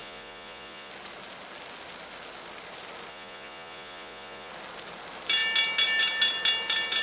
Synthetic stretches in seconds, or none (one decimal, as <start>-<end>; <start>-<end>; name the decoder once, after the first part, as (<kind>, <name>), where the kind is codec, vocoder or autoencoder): 0.0-0.9 (vocoder, Vocos); 3.1-4.5